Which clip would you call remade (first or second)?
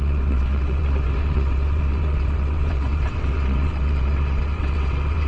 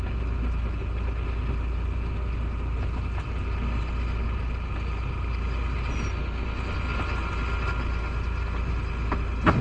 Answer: first